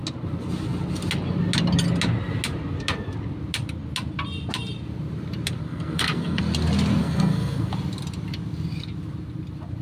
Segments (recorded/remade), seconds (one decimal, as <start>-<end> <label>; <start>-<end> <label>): 0.0-5.6 recorded; 5.6-6.4 remade; 6.4-7.0 recorded; 7.0-7.7 remade; 7.7-9.8 recorded